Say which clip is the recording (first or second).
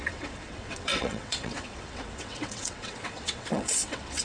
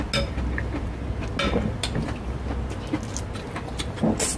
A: second